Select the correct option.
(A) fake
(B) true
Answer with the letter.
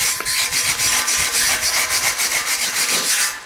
A